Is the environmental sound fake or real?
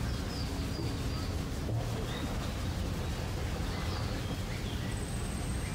real